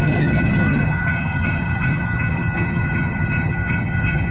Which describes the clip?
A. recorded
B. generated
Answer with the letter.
B